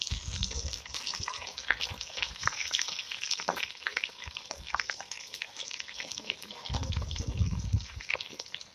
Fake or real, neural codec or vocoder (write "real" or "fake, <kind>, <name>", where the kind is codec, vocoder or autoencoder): fake, codec, SNAC